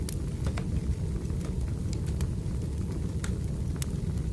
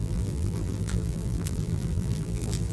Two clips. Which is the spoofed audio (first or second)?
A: second